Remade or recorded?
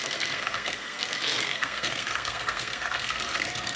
remade